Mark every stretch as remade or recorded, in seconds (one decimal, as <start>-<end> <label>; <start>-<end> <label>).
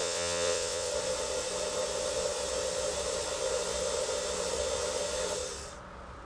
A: 0.0-0.9 remade; 0.9-6.2 recorded